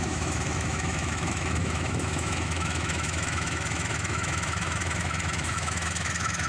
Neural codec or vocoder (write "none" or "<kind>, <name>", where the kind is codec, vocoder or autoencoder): autoencoder, DAC-VAE